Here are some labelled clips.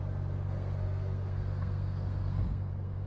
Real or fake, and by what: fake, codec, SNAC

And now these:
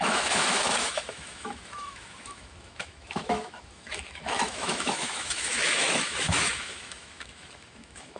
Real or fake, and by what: fake, autoencoder, DAC-VAE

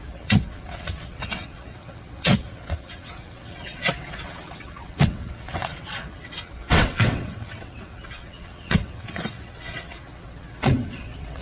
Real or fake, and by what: fake, vocoder, WaveNeXt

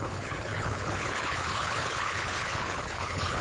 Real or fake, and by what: fake, codec, HILCodec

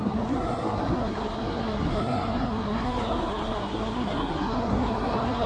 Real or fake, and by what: fake, codec, SNAC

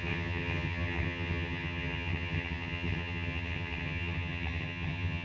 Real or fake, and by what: fake, vocoder, HiFi-GAN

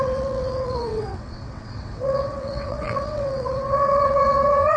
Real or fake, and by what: fake, vocoder, WaveNeXt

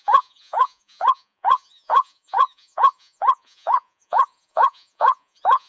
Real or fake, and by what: fake, vocoder, Vocos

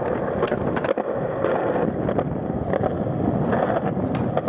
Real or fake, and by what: real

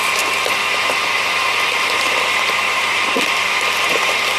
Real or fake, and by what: real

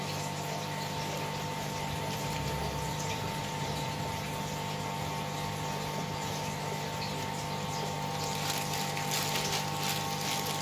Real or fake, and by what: real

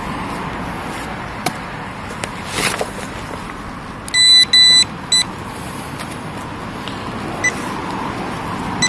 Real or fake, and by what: real